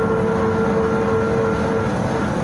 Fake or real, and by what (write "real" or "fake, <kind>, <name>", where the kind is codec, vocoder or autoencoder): real